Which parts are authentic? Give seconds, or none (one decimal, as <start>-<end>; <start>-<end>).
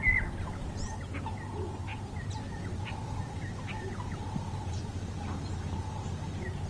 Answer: 0.0-6.7